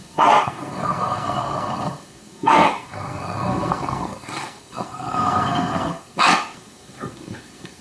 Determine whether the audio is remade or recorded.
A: remade